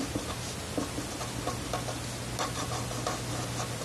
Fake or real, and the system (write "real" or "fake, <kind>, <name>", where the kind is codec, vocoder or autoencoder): real